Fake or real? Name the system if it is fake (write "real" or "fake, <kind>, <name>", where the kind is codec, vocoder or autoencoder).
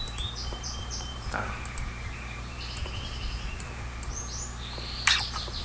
fake, vocoder, BigVGAN v2